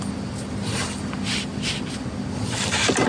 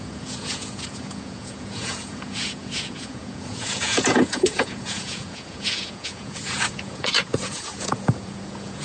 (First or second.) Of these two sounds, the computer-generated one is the second